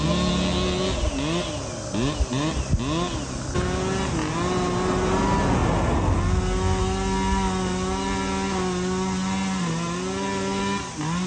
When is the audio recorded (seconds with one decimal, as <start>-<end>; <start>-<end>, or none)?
0.0-11.3

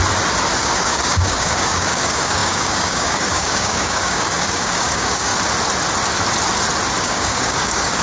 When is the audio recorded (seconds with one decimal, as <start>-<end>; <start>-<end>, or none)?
0.0-0.6; 5.3-7.0

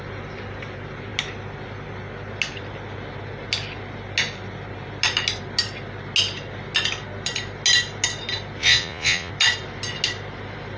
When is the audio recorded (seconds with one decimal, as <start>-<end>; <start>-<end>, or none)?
0.0-8.6; 9.3-10.8

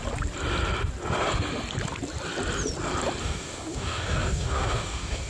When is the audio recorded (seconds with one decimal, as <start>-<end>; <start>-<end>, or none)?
0.0-3.2

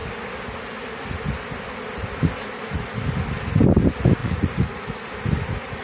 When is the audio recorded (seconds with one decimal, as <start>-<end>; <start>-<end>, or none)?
0.0-4.2; 4.8-5.8

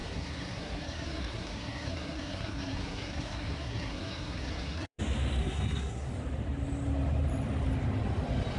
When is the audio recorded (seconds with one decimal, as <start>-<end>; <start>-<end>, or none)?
5.0-5.4; 6.1-8.6

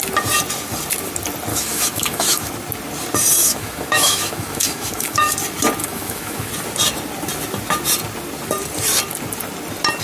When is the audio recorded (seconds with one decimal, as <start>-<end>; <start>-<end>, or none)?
0.0-1.5; 2.5-3.4; 5.3-5.8; 6.5-10.0

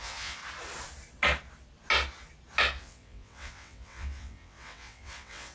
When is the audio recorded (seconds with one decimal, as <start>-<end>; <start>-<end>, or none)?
0.4-2.8